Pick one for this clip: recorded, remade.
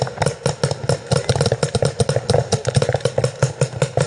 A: recorded